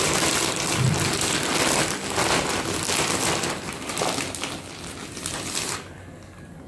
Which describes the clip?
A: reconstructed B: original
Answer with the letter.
B